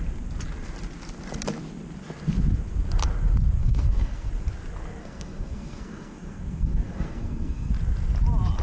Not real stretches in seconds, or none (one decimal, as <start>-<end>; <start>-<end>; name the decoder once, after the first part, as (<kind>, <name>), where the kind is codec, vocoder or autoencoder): 3.6-4.3 (codec, SNAC); 5.0-7.7